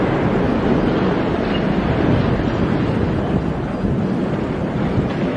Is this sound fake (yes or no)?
no